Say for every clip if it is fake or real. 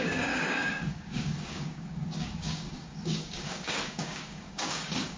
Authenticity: fake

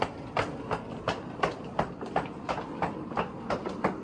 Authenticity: fake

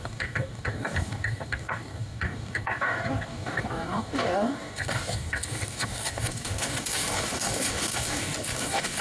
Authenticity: fake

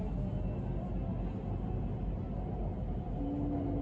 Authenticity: real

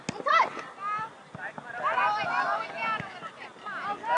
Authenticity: real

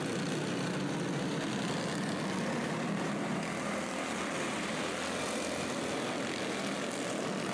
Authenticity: real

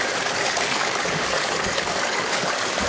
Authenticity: fake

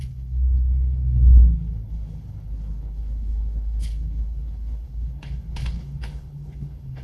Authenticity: fake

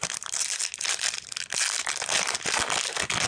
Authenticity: real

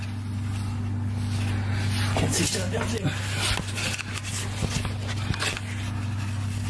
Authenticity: real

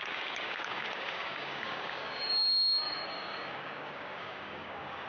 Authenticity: fake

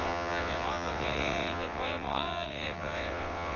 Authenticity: fake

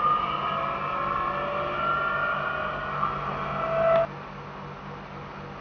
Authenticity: real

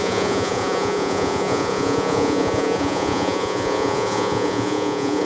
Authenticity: fake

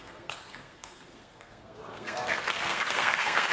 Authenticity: fake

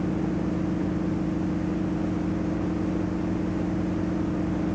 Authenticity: real